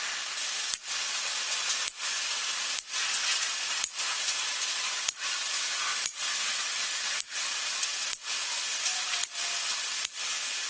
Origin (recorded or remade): recorded